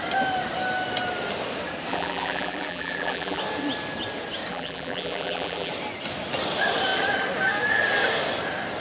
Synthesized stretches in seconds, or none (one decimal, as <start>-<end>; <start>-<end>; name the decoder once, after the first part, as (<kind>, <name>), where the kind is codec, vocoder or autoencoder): 1.9-3.4 (vocoder, BigVGAN v2); 4.5-5.7